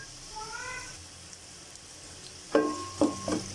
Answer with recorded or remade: recorded